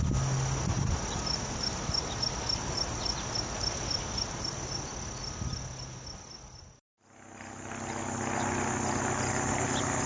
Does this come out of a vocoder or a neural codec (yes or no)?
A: no